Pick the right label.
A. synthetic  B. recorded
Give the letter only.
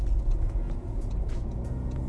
A